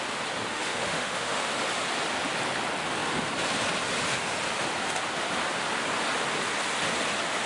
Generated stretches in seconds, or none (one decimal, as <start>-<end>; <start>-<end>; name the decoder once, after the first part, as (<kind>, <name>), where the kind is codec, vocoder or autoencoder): 0.5-1.5 (autoencoder, DAC-VAE)

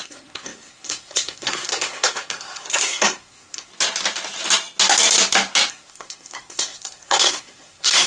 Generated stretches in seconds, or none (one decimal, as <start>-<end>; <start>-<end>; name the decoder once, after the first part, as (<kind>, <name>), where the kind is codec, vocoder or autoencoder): 0.0-3.7 (codec, SNAC); 5.7-8.1